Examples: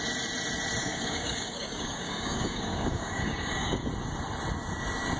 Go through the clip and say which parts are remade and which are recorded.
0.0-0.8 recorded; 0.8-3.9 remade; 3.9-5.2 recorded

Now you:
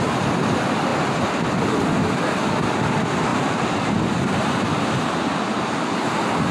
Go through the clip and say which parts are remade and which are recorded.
0.0-3.3 recorded; 3.3-5.1 remade; 5.1-6.5 recorded

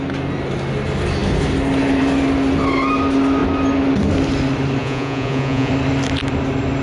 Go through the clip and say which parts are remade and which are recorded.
0.0-4.8 recorded; 4.8-5.7 remade; 5.7-6.8 recorded

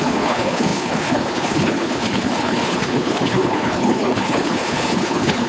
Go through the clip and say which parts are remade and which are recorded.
0.0-5.5 remade

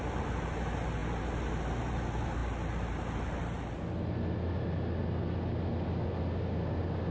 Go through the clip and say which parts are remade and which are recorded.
0.0-7.1 recorded

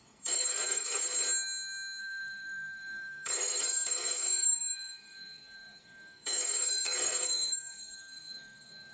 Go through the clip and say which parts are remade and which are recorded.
0.0-1.0 remade; 1.0-2.0 recorded; 2.0-8.9 remade

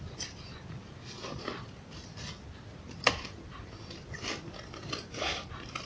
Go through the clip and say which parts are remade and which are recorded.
0.0-5.9 recorded